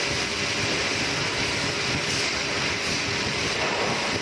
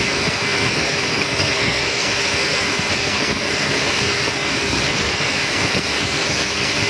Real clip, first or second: first